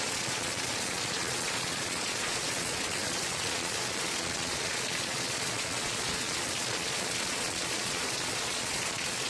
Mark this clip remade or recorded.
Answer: remade